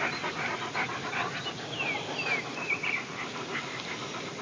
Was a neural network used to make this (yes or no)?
no